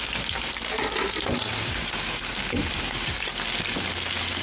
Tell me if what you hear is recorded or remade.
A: recorded